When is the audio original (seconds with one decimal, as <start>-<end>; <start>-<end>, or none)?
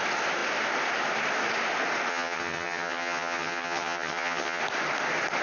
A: 0.0-2.1; 4.6-5.4